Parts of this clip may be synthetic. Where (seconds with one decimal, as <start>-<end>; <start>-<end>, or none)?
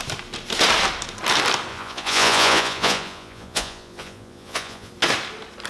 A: 1.7-4.9